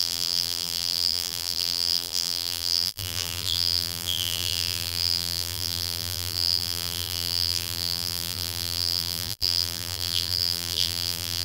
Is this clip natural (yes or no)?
no